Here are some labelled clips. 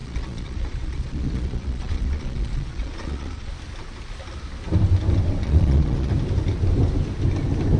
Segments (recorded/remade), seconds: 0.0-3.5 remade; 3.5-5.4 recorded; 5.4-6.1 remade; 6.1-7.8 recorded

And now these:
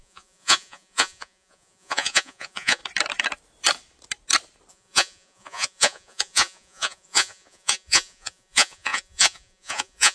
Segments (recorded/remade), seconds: 0.0-2.8 remade; 2.8-4.7 recorded; 4.7-10.1 remade

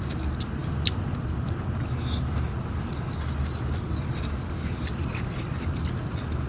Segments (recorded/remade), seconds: 0.0-6.5 recorded

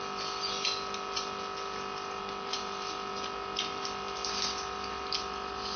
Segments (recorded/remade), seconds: 0.0-5.8 recorded